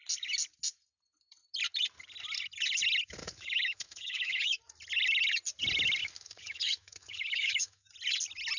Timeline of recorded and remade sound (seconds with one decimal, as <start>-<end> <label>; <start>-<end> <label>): 0.0-3.2 recorded; 3.2-4.6 remade; 4.6-6.0 recorded; 6.0-7.9 remade; 7.9-8.6 recorded